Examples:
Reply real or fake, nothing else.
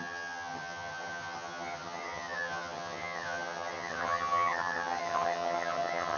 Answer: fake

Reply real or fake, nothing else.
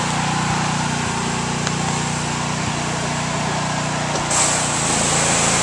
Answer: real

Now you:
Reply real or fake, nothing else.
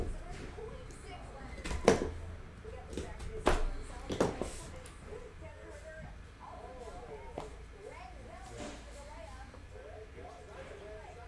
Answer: real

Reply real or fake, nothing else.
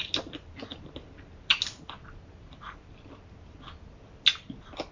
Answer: real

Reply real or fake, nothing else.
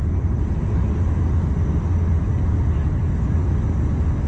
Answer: real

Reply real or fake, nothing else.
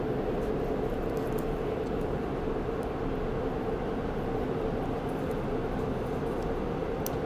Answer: real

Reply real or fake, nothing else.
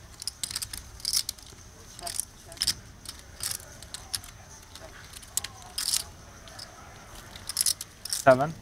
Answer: real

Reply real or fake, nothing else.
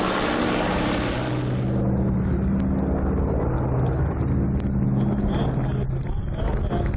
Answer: real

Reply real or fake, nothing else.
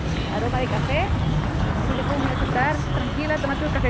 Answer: real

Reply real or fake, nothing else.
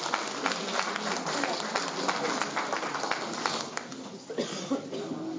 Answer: real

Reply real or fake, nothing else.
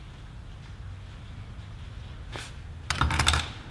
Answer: real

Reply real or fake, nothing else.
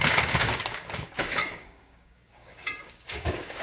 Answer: fake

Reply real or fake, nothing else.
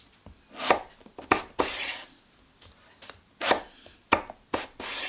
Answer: real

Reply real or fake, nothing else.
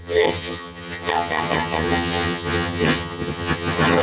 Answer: fake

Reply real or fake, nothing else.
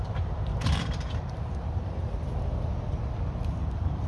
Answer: fake